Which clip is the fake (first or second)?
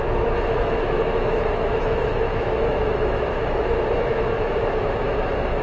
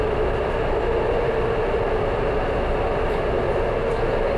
first